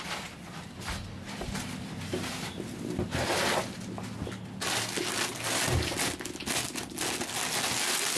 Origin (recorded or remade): recorded